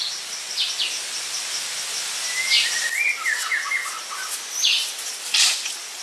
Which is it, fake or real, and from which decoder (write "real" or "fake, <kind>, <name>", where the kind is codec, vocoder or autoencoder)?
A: real